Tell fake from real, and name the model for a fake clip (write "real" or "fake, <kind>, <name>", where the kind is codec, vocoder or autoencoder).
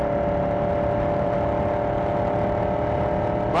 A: real